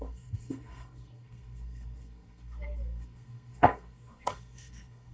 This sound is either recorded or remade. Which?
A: remade